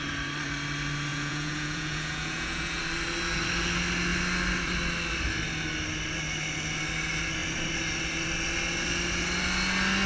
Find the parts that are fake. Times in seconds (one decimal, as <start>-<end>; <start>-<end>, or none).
1.1-2.8